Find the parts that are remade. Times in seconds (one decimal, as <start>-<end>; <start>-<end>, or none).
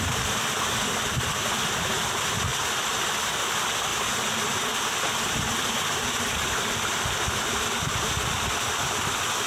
none